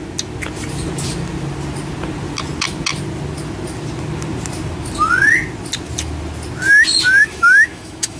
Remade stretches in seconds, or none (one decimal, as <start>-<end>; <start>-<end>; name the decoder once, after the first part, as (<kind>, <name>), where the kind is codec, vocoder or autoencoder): 7.2-8.2 (autoencoder, DAC-VAE)

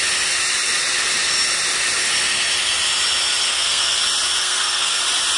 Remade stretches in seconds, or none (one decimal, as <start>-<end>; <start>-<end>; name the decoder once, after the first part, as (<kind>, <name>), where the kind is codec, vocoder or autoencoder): 3.5-4.0 (codec, SNAC); 4.4-5.0

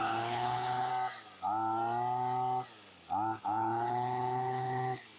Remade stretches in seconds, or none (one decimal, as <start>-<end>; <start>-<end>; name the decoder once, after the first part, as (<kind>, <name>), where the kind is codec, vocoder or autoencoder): 0.0-0.9 (codec, HILCodec); 3.4-5.2

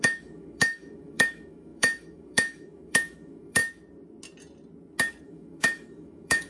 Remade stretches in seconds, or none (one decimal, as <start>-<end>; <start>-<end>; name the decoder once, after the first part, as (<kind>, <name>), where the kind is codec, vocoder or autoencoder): 0.0-3.6 (autoencoder, DAC-VAE); 5.2-6.5

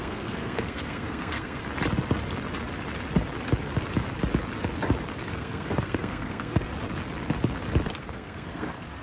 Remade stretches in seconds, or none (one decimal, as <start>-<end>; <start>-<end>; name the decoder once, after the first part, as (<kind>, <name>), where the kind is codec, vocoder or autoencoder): 0.0-1.6 (codec, SNAC); 5.3-6.7; 8.0-9.0